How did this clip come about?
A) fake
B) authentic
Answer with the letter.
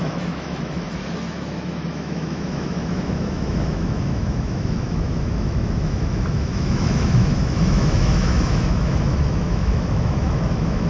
A